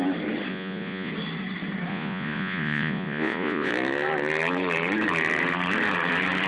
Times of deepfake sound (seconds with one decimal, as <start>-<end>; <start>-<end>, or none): 0.5-1.1; 1.9-3.7